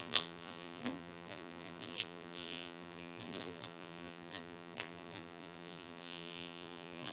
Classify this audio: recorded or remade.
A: remade